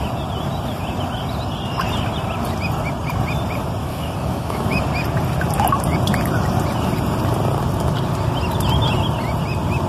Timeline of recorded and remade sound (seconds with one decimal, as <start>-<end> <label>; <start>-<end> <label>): 0.0-3.8 recorded; 3.8-4.8 remade; 4.8-9.9 recorded